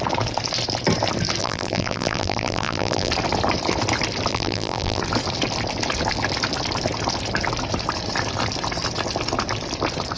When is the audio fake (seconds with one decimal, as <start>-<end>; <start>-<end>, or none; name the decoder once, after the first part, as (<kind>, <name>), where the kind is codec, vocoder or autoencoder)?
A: 1.4-3.1 (vocoder, BigVGAN v2); 4.3-5.0

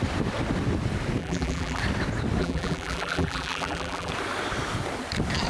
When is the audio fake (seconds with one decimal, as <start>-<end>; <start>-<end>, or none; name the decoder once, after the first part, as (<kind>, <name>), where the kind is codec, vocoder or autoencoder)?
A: 1.2-1.8 (vocoder, BigVGAN v2); 2.4-4.1

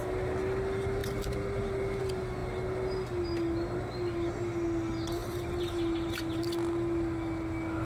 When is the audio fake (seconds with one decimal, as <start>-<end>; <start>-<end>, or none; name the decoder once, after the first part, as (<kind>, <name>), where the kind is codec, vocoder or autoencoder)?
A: 5.2-6.4 (vocoder, BigVGAN v2)

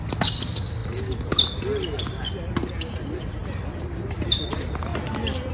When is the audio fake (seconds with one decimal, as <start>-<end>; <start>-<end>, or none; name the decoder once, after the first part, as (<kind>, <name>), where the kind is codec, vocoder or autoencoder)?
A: none

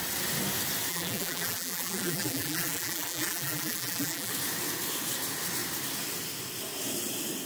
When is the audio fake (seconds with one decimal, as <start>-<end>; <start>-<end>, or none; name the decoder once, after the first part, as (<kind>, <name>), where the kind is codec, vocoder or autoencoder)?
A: 0.9-4.3 (vocoder, BigVGAN v2)